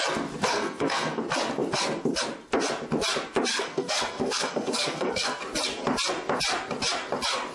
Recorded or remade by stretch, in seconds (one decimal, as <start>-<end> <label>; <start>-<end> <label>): 0.0-0.5 recorded; 0.5-1.2 remade; 1.2-3.5 recorded; 3.5-5.4 remade; 5.4-7.5 recorded